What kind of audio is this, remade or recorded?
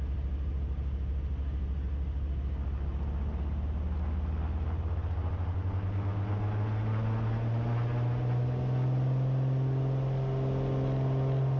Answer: recorded